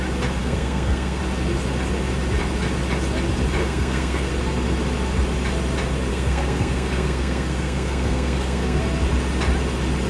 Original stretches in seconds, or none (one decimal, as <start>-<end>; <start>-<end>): 0.0-0.4; 1.2-3.6; 4.3-6.1; 8.8-10.1